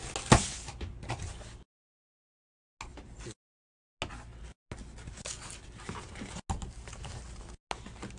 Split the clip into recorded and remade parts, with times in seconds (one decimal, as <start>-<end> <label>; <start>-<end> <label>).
0.0-8.2 recorded